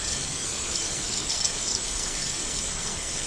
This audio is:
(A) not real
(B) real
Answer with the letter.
A